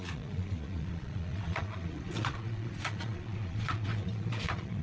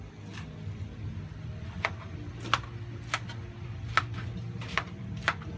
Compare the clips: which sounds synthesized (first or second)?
first